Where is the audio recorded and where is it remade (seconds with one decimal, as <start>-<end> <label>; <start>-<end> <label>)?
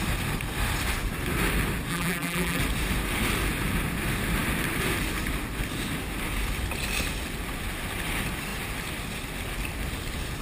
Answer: 0.0-1.9 recorded; 1.9-2.6 remade; 2.6-10.4 recorded